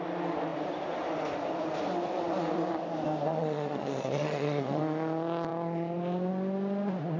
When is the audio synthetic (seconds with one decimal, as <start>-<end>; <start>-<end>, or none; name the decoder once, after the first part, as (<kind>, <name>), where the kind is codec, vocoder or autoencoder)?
3.3-4.8 (vocoder, Vocos)